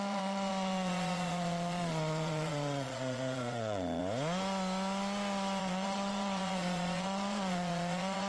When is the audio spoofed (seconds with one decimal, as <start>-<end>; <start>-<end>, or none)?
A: 0.0-4.0; 5.6-8.3